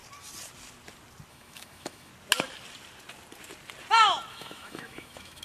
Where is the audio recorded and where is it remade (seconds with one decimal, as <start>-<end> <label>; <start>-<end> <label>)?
0.0-1.3 recorded; 1.3-2.1 remade; 2.1-4.3 recorded; 4.3-5.4 remade